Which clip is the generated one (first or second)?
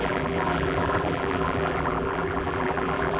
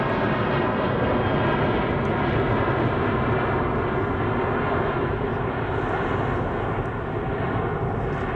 first